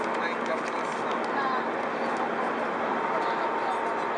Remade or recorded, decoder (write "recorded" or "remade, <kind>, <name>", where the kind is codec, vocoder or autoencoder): recorded